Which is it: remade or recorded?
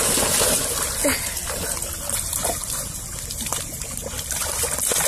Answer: recorded